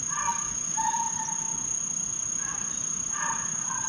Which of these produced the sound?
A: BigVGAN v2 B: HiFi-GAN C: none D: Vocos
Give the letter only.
C